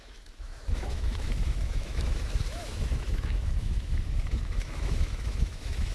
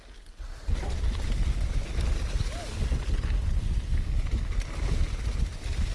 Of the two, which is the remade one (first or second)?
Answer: first